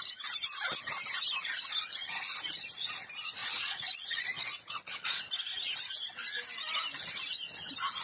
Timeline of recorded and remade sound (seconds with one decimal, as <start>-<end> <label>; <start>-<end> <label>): 0.0-3.4 recorded; 3.4-5.2 remade; 5.2-8.0 recorded